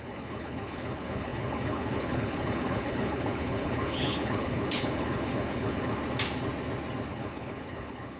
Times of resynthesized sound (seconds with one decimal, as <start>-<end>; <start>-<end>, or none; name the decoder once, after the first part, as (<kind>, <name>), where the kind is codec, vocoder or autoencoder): 0.0-6.0 (codec, HILCodec); 7.1-8.2